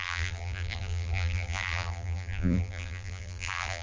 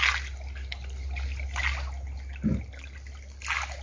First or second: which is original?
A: second